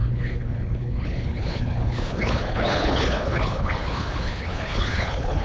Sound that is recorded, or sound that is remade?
remade